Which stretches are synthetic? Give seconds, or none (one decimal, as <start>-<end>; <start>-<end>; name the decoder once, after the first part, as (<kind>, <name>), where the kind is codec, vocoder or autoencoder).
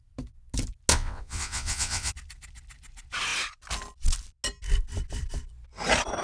0.9-2.1 (vocoder, WaveNeXt)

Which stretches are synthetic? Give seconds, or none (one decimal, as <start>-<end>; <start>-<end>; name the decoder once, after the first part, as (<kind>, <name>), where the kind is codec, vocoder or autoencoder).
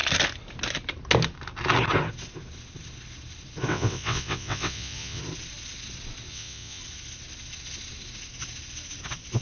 3.7-5.2 (vocoder, WaveNeXt); 6.3-6.8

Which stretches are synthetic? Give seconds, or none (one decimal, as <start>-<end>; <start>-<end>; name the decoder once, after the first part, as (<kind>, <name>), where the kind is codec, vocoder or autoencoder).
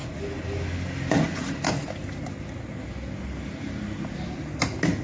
none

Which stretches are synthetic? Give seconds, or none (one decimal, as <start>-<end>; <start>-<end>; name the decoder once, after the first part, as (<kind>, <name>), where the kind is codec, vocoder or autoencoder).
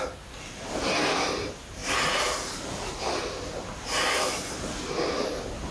none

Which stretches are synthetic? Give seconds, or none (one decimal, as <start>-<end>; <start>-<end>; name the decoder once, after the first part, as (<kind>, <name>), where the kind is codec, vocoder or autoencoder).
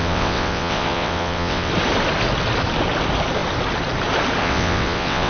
0.0-1.7 (vocoder, WaveNeXt); 4.4-5.3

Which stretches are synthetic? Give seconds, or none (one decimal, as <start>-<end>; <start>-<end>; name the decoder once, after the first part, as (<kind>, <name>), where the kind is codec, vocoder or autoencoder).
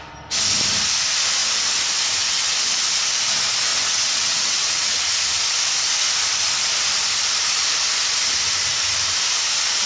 3.7-5.0 (vocoder, WaveNeXt)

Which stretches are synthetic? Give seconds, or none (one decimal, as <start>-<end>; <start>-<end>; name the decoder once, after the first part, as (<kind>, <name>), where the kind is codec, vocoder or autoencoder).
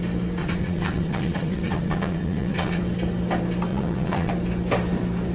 0.4-2.8 (vocoder, WaveNeXt); 3.7-4.3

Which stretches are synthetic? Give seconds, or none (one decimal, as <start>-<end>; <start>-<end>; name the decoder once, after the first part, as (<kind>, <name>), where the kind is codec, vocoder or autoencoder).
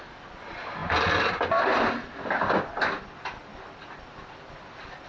none